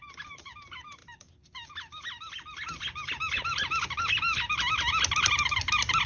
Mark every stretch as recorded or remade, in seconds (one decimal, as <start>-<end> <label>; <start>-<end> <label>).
0.0-6.1 recorded